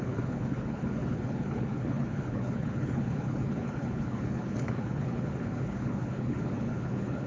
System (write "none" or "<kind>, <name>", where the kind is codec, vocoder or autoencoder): codec, HILCodec